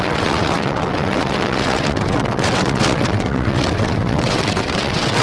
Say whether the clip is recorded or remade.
remade